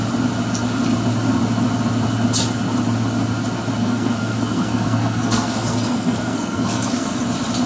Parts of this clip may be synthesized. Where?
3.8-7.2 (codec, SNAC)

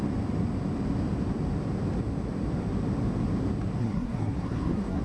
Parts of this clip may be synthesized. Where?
3.8-5.0 (codec, SNAC)

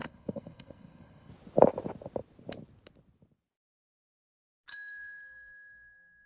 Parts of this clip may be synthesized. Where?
0.0-1.3 (codec, SNAC); 4.7-6.3

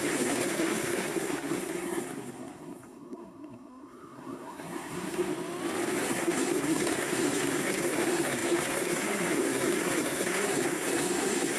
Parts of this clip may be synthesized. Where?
0.0-5.3 (codec, SNAC); 6.0-11.6

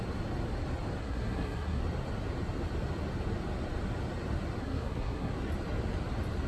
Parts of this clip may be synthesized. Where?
1.0-1.8 (codec, SNAC); 4.6-5.3

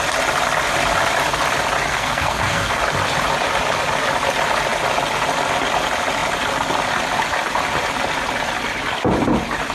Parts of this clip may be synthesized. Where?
1.9-2.8 (codec, SNAC)

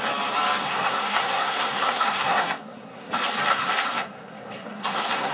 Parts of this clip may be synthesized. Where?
0.6-3.1 (codec, SNAC); 3.5-5.3